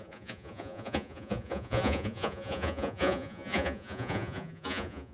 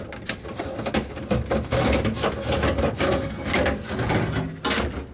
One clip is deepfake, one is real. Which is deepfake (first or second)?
first